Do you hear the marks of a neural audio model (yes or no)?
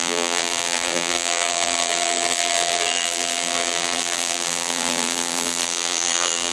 yes